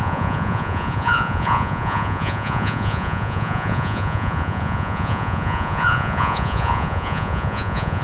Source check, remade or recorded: remade